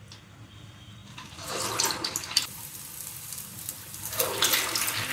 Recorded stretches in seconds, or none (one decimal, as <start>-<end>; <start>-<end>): 0.0-1.0; 3.7-5.1